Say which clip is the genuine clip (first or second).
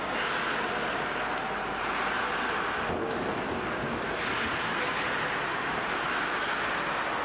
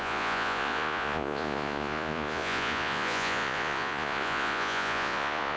first